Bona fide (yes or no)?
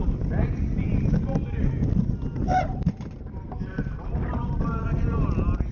yes